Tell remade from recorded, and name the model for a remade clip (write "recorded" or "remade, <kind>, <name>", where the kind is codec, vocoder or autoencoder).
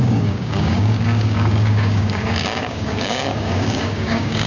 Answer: remade, codec, DAC